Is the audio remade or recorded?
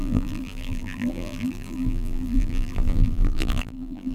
remade